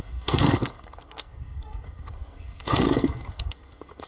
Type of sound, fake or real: fake